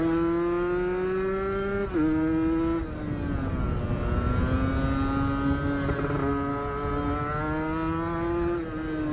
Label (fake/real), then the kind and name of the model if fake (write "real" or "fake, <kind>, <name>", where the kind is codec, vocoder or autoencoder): real